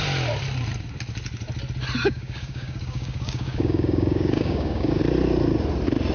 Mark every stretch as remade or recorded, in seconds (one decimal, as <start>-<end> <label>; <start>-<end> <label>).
0.0-2.0 recorded; 2.0-5.0 remade; 5.0-6.1 recorded